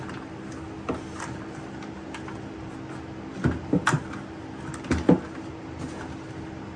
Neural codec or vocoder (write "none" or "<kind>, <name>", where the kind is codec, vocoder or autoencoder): none